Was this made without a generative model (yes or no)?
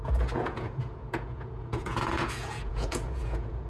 no